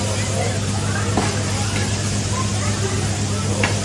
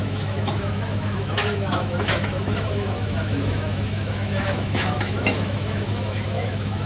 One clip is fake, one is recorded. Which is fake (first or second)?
second